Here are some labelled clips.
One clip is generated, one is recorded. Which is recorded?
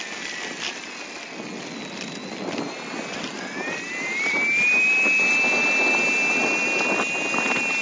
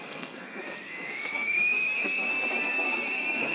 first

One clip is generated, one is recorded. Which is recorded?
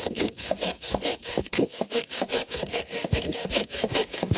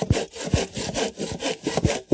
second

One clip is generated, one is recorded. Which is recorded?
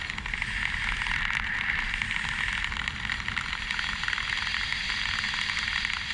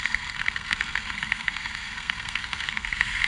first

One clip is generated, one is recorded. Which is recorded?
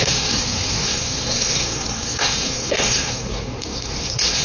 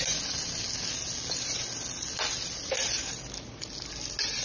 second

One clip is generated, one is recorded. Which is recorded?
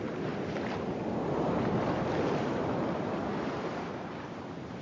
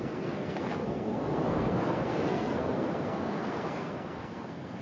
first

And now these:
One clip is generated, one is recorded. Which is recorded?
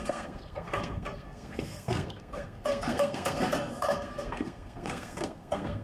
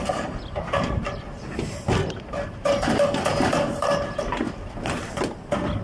second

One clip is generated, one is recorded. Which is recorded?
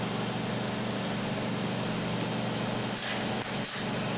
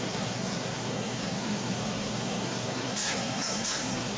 first